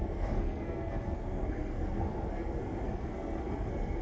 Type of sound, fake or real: fake